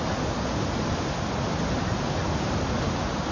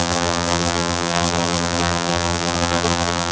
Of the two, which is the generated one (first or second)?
second